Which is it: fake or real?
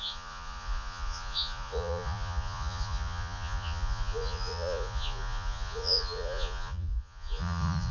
fake